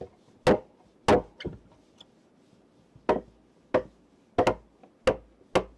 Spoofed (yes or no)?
no